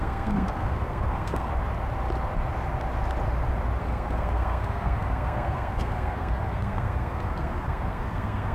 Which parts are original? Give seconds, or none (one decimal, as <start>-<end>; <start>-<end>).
1.5-3.8